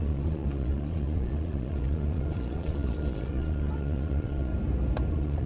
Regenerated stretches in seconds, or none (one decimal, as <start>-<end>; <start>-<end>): 0.0-4.5; 5.1-5.5